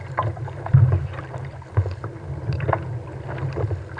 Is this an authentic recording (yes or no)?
yes